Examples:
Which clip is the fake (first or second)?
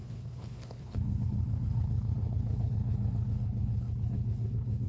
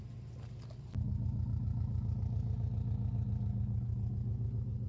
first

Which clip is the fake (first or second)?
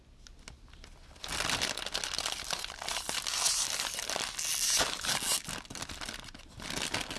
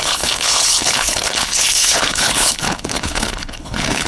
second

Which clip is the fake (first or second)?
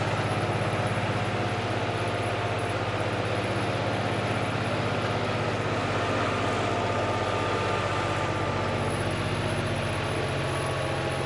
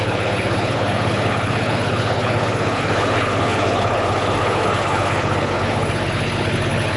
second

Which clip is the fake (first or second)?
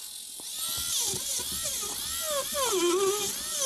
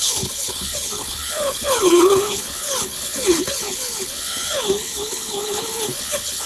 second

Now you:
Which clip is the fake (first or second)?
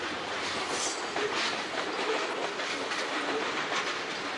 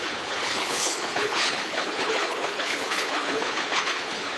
second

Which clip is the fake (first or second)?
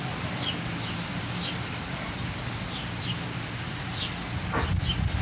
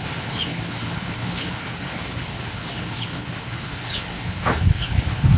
second